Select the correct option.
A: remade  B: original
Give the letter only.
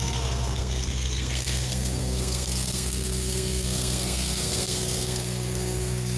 A